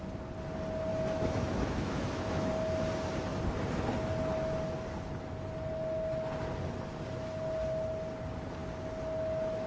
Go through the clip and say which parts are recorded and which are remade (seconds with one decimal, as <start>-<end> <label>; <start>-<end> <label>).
0.0-0.9 recorded; 0.9-2.5 remade; 2.5-9.7 recorded